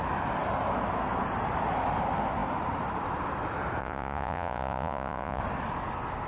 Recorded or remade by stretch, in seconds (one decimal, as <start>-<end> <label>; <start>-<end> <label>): 0.0-3.8 recorded; 3.8-5.4 remade; 5.4-6.3 recorded